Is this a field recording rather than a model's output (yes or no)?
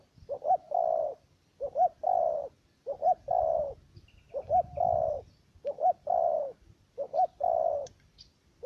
yes